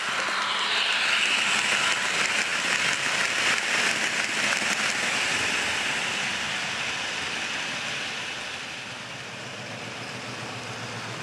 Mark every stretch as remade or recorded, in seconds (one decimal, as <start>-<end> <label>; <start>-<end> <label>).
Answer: 0.0-11.2 recorded